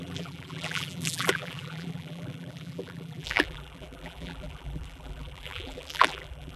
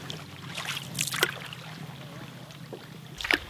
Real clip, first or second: second